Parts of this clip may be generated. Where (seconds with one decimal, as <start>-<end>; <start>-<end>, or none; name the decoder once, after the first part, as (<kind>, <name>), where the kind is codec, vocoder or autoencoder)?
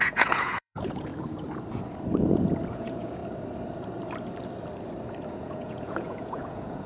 0.0-1.1 (vocoder, Vocos); 2.7-3.2; 5.3-6.9